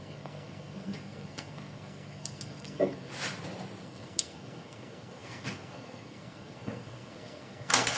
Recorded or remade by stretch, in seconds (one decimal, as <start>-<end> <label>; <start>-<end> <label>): 0.0-3.1 remade; 3.1-3.8 recorded; 3.8-8.0 remade